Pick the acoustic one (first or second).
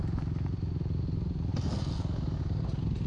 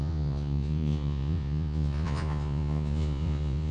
first